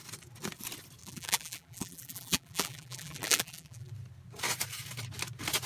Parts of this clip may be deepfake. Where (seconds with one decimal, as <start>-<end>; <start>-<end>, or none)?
1.0-3.9